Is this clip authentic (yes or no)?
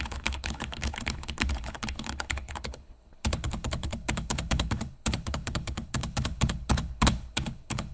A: no